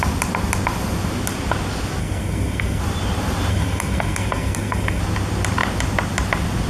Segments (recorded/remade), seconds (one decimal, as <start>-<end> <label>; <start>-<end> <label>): 0.0-2.0 recorded; 2.0-2.8 remade; 2.8-3.5 recorded; 3.5-5.0 remade; 5.0-6.7 recorded